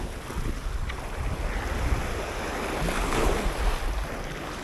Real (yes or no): yes